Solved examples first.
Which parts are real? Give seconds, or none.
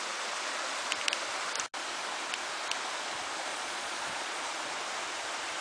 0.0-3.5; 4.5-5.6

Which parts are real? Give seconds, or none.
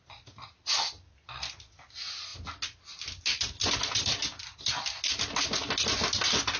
0.0-6.6